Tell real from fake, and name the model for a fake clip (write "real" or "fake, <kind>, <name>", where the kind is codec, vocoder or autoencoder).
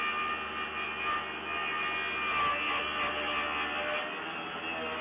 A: real